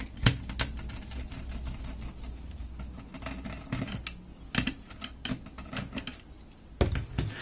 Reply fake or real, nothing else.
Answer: real